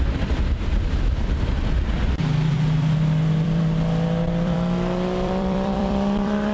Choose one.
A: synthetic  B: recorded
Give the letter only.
A